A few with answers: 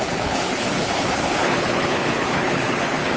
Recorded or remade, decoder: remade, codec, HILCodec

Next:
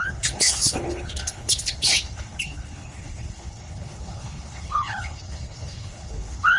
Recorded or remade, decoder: remade, codec, HILCodec